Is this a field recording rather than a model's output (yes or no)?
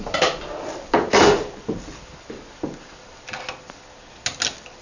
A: yes